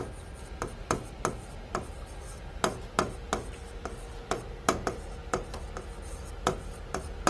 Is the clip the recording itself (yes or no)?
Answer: yes